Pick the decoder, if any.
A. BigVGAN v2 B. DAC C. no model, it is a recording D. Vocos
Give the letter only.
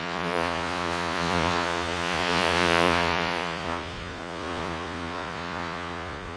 D